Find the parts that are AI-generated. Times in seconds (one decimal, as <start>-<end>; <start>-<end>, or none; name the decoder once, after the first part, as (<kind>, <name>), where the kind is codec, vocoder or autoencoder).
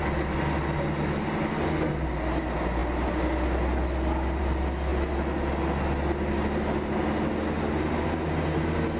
none